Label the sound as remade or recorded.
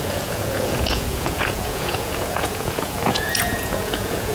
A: remade